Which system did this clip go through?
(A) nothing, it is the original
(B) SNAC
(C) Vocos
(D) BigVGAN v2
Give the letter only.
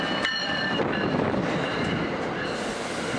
D